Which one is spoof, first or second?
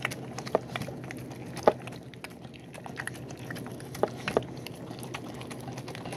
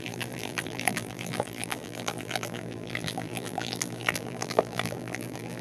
second